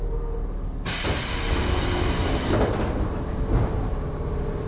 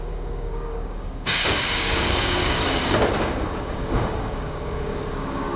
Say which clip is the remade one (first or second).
second